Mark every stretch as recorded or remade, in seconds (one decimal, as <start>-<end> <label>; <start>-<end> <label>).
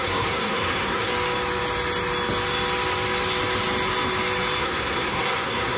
0.0-1.1 remade; 1.1-4.6 recorded; 4.6-5.8 remade